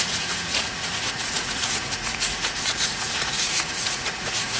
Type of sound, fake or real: fake